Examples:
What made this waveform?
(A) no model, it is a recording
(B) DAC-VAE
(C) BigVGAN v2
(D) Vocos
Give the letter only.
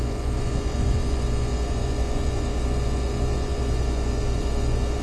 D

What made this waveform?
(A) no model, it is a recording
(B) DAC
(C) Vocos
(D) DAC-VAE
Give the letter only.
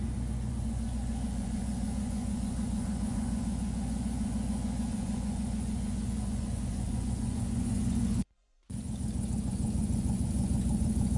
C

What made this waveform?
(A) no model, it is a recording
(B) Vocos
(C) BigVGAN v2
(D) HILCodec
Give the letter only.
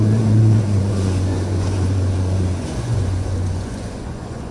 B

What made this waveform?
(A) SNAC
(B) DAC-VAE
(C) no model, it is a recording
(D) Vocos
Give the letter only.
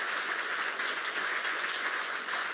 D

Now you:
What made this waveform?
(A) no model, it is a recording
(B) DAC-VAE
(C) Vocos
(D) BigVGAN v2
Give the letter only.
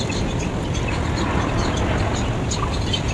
A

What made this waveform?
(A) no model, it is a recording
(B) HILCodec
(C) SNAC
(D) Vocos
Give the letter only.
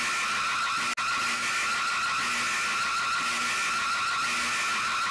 A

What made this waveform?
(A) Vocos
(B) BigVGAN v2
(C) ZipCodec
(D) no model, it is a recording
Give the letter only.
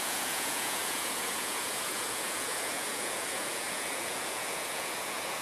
A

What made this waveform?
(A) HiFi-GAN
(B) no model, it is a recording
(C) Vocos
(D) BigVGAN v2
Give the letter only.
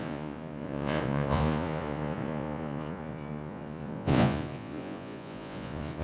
C